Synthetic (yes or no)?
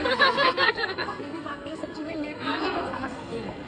yes